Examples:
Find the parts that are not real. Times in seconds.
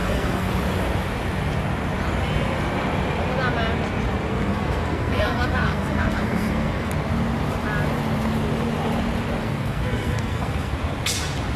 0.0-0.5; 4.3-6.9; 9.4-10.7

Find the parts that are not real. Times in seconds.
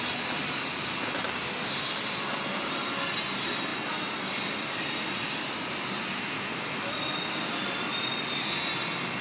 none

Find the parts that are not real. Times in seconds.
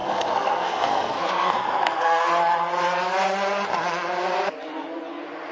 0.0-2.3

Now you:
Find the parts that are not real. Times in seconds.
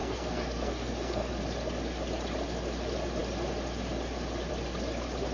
0.0-1.3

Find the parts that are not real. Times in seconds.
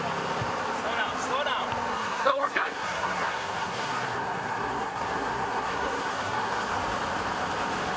1.9-6.7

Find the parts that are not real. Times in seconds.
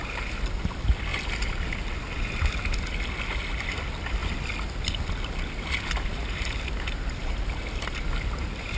none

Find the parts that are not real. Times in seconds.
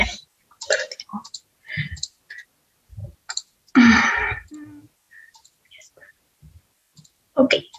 none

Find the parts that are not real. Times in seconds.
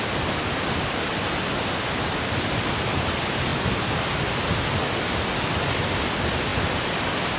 none